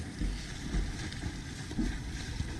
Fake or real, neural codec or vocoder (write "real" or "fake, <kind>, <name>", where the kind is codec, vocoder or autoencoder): real